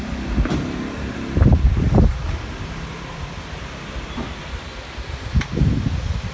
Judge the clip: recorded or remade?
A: recorded